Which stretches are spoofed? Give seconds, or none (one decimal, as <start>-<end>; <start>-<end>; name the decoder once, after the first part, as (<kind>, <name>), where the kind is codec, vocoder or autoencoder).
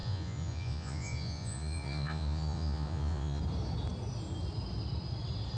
0.0-3.4 (vocoder, Vocos)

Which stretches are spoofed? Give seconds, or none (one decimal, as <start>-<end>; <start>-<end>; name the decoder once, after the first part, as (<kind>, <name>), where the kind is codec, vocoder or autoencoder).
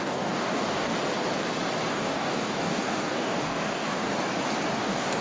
0.0-0.9 (codec, DAC); 1.9-4.1; 4.8-5.2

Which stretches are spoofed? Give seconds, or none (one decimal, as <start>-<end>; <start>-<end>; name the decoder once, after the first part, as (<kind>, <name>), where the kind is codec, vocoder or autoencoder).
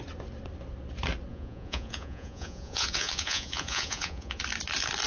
1.3-4.4 (vocoder, Vocos)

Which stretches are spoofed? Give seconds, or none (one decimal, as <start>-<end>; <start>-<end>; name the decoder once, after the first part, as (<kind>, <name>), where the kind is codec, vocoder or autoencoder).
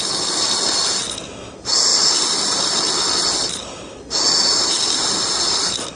none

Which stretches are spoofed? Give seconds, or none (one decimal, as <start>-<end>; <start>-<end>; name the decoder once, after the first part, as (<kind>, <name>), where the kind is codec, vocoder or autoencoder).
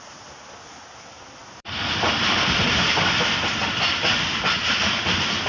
none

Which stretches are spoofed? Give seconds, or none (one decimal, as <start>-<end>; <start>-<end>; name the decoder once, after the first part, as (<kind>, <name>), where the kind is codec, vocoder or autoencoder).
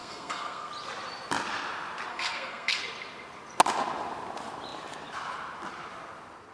0.0-0.7 (codec, SNAC); 2.1-2.8